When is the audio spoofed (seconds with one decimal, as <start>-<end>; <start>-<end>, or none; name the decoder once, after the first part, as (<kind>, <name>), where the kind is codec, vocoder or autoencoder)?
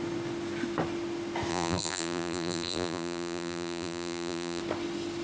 1.5-4.6 (vocoder, BigVGAN v2)